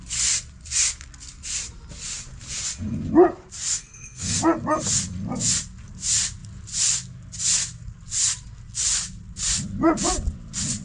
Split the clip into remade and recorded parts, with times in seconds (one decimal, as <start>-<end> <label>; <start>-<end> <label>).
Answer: 0.0-3.7 recorded; 3.7-4.4 remade; 4.4-10.8 recorded